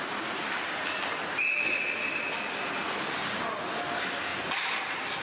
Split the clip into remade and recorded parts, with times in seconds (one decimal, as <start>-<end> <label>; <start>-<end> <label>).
0.0-2.0 recorded; 2.0-2.5 remade; 2.5-5.2 recorded